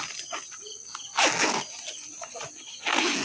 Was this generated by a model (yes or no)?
no